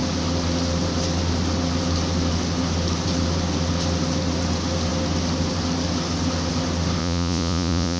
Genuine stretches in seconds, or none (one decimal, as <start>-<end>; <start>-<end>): 0.0-7.0